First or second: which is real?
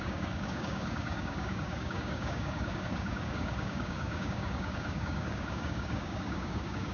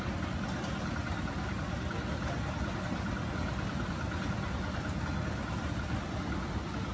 second